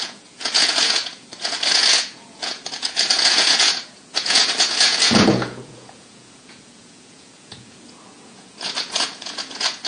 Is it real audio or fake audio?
fake